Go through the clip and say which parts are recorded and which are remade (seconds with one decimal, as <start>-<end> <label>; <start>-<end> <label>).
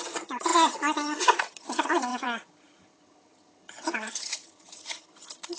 0.0-5.6 remade